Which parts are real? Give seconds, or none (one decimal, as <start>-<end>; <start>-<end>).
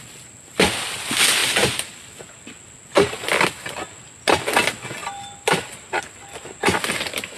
0.0-1.4; 2.1-5.0; 6.0-7.4